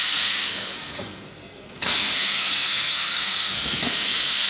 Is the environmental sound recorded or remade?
remade